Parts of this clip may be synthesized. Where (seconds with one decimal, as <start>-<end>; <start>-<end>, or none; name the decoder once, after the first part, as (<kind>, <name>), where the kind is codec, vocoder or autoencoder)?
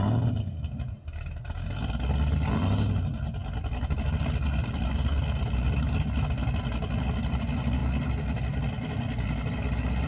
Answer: none